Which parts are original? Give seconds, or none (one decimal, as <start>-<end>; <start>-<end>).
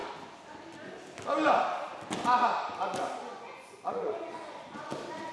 0.0-3.3; 4.8-5.3